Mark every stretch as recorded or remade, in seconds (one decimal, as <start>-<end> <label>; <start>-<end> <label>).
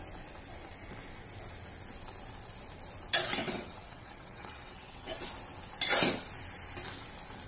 0.0-3.4 recorded; 3.4-5.1 remade; 5.1-7.5 recorded